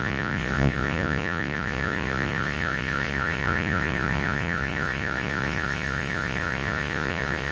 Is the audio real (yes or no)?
no